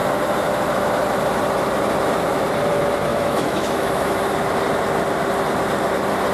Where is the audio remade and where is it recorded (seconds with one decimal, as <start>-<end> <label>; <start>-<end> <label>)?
0.0-3.1 recorded; 3.1-4.2 remade; 4.2-6.3 recorded